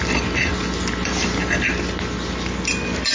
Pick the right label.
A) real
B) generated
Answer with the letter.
A